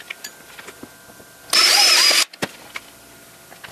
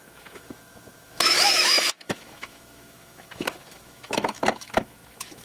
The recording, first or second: first